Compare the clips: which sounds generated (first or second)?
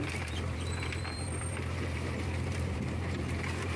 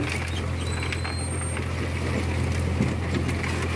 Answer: first